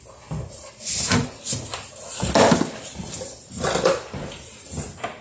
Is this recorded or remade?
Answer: recorded